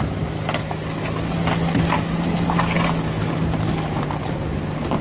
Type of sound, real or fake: real